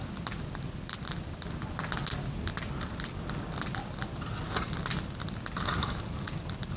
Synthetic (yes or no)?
no